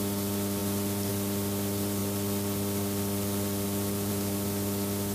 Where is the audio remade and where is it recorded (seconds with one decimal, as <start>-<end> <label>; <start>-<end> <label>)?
0.0-0.6 recorded; 0.6-1.1 remade; 1.1-2.0 recorded; 2.0-4.1 remade; 4.1-5.1 recorded